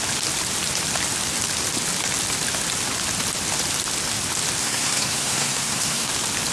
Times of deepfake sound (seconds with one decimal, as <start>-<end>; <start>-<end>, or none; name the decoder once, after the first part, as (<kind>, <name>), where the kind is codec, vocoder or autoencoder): 4.6-6.1 (codec, SNAC)

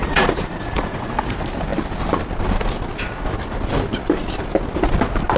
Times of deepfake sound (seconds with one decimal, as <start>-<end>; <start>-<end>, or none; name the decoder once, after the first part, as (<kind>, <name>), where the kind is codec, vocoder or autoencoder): 0.0-1.1 (vocoder, Vocos)

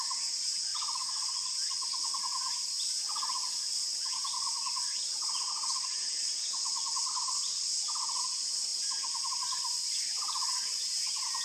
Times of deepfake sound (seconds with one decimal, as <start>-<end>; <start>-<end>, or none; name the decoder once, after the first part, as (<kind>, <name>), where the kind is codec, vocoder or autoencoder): none

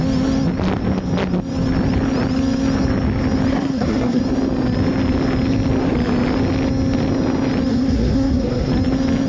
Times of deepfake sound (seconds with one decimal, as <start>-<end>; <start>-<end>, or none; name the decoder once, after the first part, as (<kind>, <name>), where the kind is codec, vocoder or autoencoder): 3.5-4.2 (codec, SNAC); 7.7-8.7

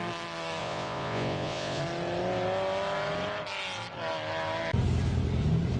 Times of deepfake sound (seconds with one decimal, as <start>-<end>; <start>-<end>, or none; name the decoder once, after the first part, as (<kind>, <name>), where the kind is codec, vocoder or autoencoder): 0.6-1.8 (vocoder, Vocos)